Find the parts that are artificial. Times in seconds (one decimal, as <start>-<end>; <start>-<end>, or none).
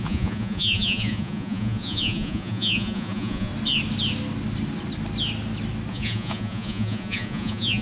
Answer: 0.0-3.5; 5.9-7.8